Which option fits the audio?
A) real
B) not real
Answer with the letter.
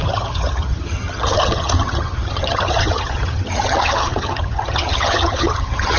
B